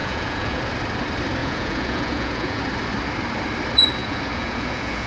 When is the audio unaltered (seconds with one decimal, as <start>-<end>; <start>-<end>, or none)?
0.6-1.4; 2.6-4.0